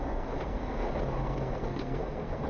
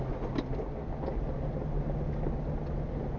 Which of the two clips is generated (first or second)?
first